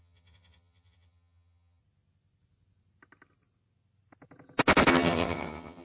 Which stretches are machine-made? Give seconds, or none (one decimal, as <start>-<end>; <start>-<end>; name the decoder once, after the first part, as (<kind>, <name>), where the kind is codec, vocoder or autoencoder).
0.0-1.8 (vocoder, HiFi-GAN); 4.9-5.8